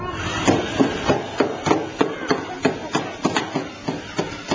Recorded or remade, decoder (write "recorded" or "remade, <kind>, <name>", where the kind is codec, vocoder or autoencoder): recorded